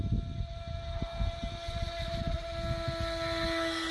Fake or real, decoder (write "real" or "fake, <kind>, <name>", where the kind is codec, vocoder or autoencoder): real